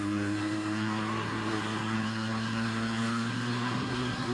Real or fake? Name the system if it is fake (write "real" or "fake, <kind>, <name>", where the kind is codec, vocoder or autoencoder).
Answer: fake, codec, SNAC